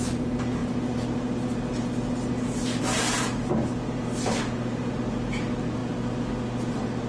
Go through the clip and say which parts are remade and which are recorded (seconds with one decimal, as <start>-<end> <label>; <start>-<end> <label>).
0.0-7.1 recorded